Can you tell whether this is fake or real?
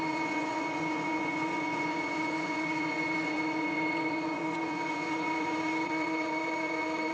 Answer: fake